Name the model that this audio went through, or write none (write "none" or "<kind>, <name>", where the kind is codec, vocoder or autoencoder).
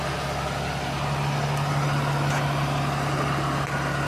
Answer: none